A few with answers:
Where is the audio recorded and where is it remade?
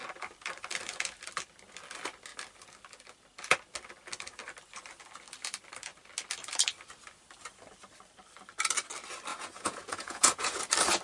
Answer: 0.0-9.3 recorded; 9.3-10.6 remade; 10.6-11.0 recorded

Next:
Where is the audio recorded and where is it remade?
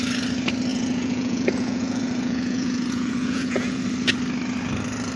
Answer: 0.0-0.7 recorded; 0.7-3.8 remade; 3.8-5.2 recorded